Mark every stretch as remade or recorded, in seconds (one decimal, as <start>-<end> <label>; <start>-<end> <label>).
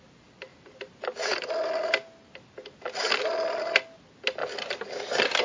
0.0-5.4 recorded